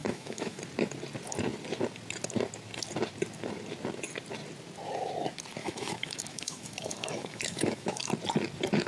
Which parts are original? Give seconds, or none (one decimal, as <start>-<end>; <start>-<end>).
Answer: 0.6-5.6; 8.1-8.9